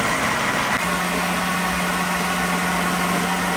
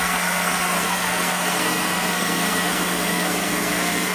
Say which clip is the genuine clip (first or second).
first